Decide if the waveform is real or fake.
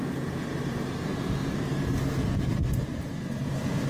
fake